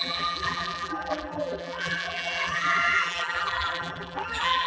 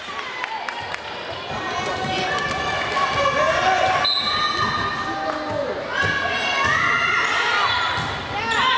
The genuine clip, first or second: second